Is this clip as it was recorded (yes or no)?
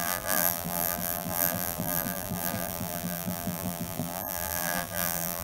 no